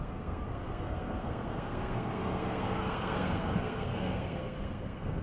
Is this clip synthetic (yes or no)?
yes